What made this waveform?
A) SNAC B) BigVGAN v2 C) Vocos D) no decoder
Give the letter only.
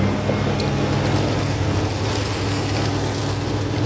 D